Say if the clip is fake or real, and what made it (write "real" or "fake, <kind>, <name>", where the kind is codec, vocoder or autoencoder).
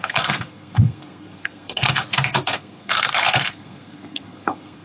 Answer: fake, codec, SNAC